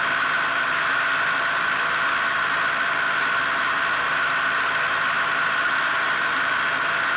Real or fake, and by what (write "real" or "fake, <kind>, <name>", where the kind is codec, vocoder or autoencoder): real